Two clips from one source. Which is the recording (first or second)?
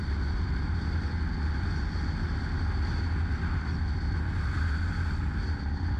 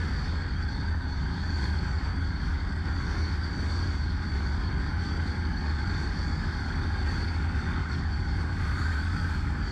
first